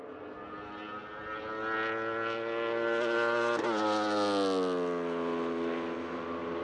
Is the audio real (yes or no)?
yes